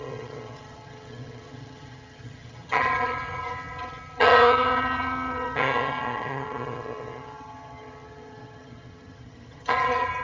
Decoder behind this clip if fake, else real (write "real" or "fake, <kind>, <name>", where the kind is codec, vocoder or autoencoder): fake, vocoder, HiFi-GAN